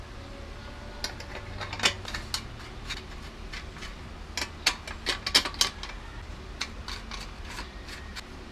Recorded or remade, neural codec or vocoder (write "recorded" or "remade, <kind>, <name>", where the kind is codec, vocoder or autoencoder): recorded